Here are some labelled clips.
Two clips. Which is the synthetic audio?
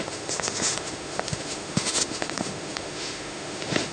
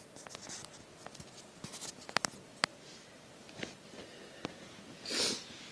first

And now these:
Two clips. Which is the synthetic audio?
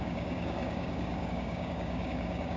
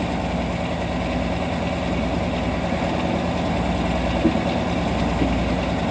first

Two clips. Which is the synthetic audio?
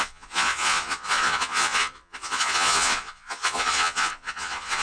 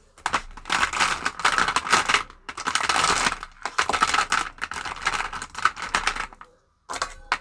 first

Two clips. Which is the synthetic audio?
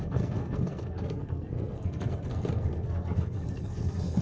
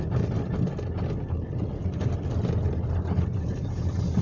first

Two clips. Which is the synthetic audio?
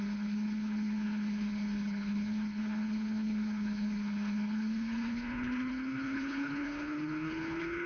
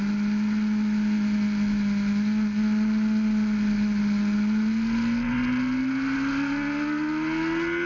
first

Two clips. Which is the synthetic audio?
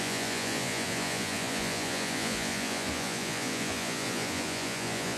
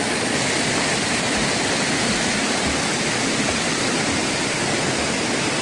first